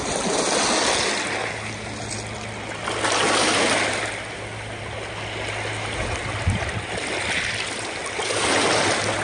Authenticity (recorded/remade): recorded